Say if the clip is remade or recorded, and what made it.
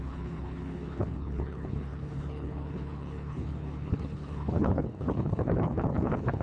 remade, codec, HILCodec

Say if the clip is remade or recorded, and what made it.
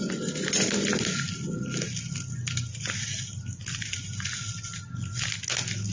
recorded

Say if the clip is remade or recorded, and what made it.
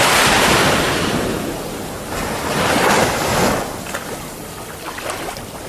recorded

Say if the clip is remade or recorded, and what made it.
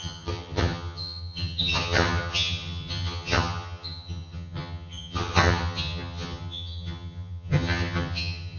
remade, vocoder, HiFi-GAN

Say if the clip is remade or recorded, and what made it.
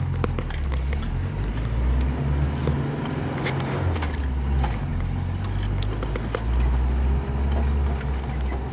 recorded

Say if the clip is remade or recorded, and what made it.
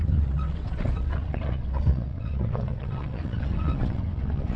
remade, vocoder, WaveNeXt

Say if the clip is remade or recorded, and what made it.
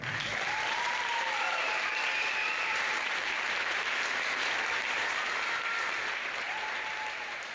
remade, vocoder, BigVGAN v2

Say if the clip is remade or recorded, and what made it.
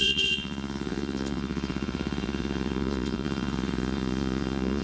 remade, vocoder, Vocos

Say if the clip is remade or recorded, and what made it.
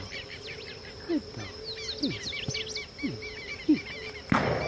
recorded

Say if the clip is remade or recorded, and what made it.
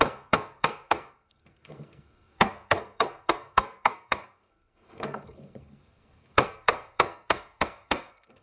remade, codec, SNAC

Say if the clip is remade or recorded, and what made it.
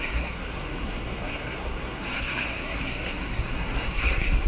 remade, codec, SNAC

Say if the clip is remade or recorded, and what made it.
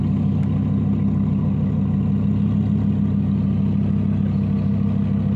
recorded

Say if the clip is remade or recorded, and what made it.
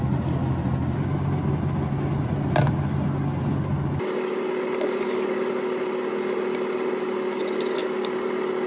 recorded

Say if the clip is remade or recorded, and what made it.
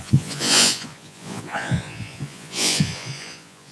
remade, vocoder, Vocos